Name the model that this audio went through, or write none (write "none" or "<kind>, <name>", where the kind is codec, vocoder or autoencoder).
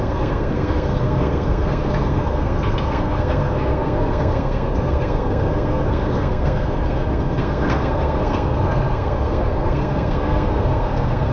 codec, SNAC